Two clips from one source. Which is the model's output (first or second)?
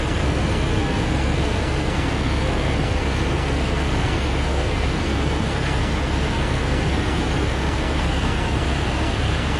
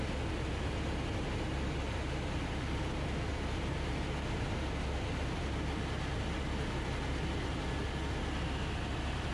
first